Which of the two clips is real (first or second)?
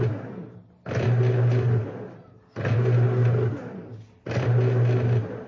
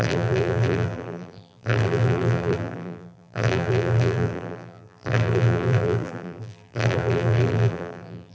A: first